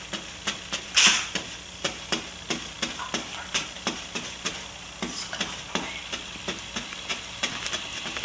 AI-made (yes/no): no